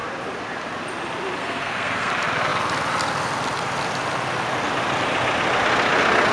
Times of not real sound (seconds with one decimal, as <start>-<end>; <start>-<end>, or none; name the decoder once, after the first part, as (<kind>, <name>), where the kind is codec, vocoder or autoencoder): 1.4-2.1 (codec, SNAC)